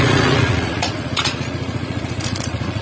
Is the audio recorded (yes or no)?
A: no